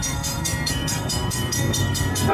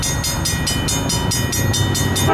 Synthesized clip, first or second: first